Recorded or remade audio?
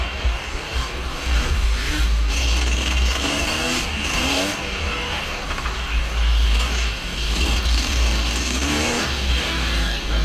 remade